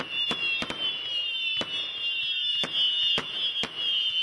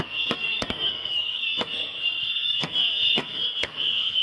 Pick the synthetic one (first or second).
second